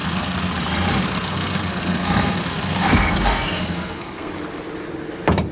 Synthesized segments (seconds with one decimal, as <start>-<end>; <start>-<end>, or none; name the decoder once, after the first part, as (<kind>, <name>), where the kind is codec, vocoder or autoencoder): 0.0-0.5 (codec, SNAC); 1.0-4.3